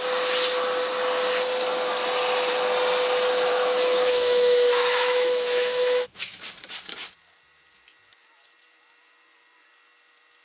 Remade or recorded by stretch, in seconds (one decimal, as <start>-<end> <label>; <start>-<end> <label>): 0.0-3.5 recorded; 3.5-6.4 remade; 6.4-10.4 recorded